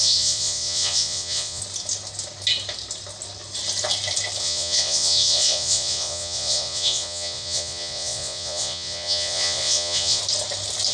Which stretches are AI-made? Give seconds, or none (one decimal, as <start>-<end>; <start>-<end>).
0.0-1.6; 4.4-10.2